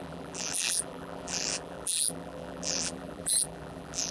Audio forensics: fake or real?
fake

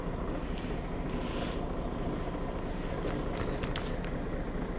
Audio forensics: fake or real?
real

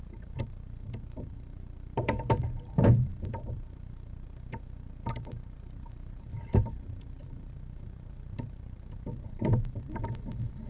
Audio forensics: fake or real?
fake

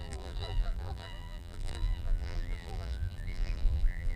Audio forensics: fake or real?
fake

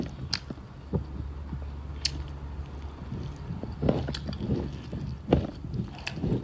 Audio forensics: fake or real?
real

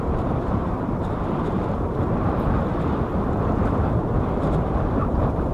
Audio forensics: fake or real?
fake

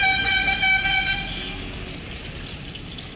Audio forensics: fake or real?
real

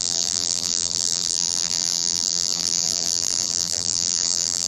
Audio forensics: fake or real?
fake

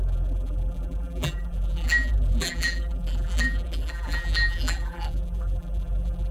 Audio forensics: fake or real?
fake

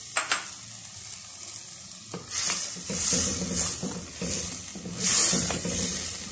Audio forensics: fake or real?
real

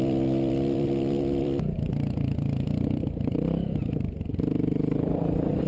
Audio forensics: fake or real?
fake